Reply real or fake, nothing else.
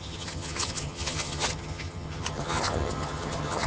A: fake